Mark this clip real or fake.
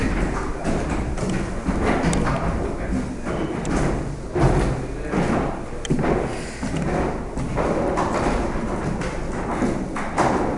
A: real